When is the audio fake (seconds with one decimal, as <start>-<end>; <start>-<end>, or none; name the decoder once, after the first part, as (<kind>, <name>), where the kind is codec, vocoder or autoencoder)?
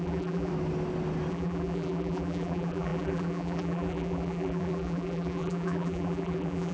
0.0-0.5 (vocoder, BigVGAN v2); 1.3-6.7